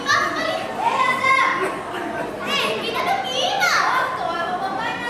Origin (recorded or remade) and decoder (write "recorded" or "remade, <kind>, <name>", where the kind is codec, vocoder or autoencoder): remade, vocoder, BigVGAN v2